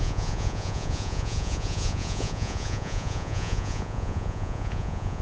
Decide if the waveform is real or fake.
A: fake